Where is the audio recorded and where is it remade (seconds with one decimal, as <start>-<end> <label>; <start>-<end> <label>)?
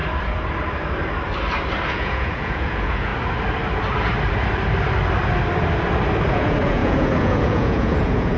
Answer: 0.0-1.9 recorded; 1.9-3.1 remade; 3.1-6.3 recorded; 6.3-8.4 remade